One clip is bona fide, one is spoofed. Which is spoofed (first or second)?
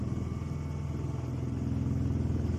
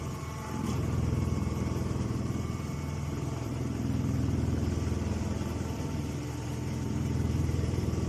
second